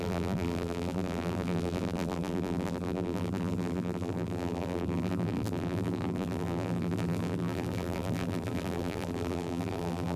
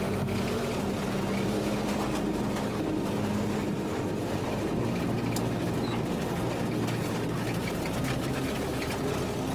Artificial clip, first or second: first